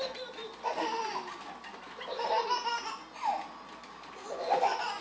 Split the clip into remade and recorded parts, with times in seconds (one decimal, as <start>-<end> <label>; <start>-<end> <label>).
0.0-4.2 recorded; 4.2-5.0 remade